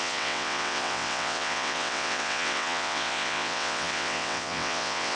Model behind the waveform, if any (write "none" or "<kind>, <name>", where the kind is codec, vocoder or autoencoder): vocoder, WaveNeXt